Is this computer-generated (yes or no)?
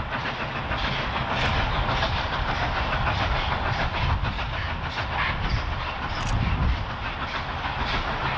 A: no